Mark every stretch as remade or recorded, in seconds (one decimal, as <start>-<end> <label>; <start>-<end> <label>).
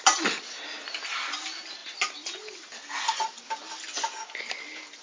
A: 0.0-5.0 recorded